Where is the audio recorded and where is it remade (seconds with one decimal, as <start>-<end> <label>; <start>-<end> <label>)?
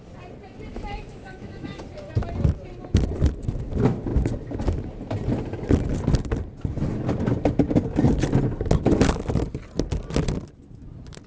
0.0-0.7 recorded; 0.7-1.8 remade; 1.8-11.3 recorded